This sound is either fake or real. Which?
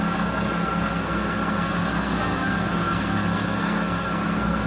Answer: fake